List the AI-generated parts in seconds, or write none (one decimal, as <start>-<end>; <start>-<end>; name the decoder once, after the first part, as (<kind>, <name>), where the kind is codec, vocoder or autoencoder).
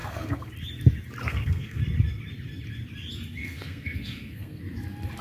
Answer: 0.0-0.5 (codec, SNAC); 1.2-1.8; 3.4-4.6